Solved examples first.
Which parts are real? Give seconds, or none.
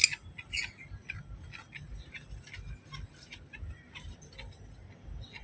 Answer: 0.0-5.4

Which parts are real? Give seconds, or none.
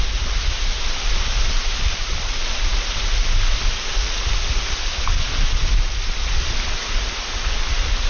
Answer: 0.0-8.1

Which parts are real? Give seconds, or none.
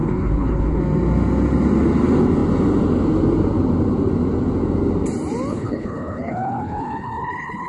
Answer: 0.8-5.5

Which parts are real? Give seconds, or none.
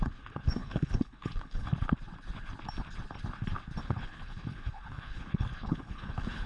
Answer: 1.7-3.8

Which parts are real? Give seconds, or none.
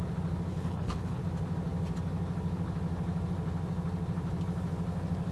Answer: 0.0-0.5; 1.2-5.3